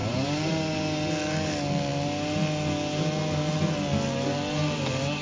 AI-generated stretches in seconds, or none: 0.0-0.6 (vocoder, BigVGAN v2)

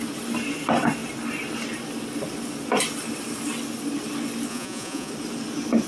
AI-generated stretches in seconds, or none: 4.5-5.1 (vocoder, Vocos)

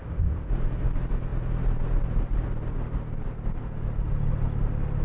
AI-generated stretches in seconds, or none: 0.0-0.5 (codec, ZipCodec)